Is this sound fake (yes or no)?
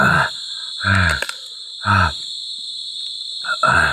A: no